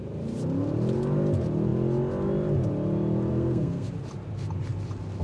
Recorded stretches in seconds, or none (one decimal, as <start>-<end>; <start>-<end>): 0.0-3.3; 3.9-5.2